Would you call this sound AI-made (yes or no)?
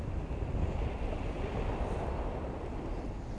no